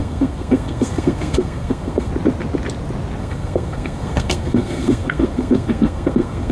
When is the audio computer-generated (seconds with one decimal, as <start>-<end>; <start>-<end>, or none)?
0.0-2.1; 3.2-6.5

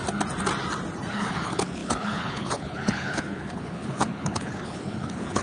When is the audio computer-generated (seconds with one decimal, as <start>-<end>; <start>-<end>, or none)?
1.1-5.4

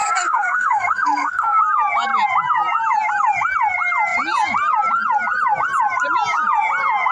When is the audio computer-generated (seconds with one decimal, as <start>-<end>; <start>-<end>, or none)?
0.0-1.6

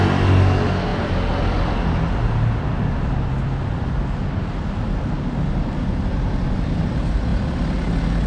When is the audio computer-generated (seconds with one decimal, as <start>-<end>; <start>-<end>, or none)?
none

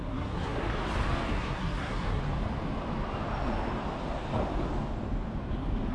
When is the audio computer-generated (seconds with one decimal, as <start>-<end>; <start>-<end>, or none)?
0.0-0.7; 1.3-2.2

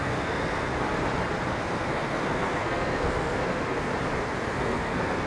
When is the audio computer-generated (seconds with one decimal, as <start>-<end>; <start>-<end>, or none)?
0.0-0.7; 1.5-3.9; 4.5-5.3

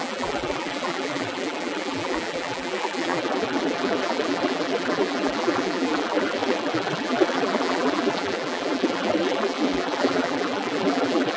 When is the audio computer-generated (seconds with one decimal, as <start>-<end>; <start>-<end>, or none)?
0.0-11.4